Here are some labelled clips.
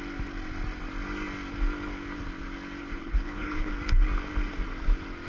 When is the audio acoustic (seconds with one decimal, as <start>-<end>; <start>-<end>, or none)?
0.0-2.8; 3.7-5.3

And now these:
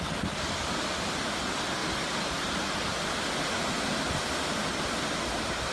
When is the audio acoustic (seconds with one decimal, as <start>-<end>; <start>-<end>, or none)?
0.0-5.7

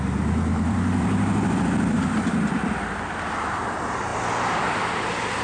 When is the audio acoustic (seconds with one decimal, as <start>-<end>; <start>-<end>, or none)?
0.0-0.5; 2.4-4.1; 4.9-5.4

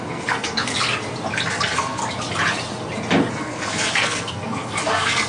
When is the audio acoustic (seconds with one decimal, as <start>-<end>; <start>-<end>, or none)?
0.7-1.5; 2.0-3.3

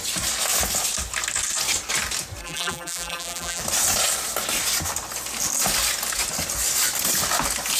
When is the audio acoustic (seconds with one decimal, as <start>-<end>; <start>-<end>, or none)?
0.0-2.4; 3.6-7.8